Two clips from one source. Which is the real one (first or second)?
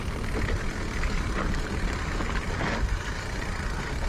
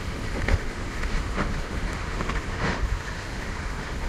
first